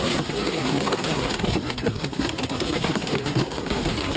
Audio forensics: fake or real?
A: fake